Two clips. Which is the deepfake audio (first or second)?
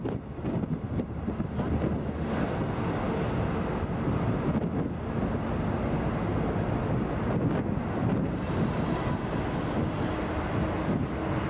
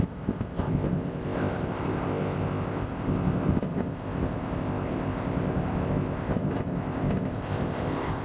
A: second